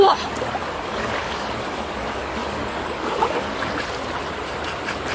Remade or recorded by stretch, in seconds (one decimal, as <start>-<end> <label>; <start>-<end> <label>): 0.0-0.6 recorded; 0.6-3.7 remade; 3.7-5.1 recorded